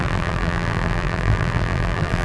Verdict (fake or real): fake